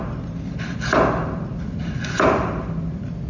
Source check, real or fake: real